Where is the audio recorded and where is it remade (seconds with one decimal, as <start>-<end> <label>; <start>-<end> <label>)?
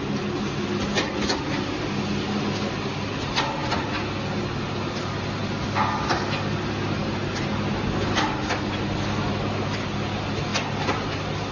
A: 0.0-11.5 recorded